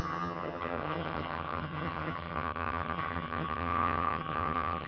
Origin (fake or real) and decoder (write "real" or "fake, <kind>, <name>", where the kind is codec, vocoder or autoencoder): fake, vocoder, HiFi-GAN